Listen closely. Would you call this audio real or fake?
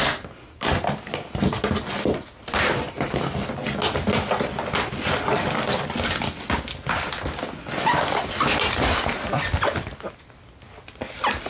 real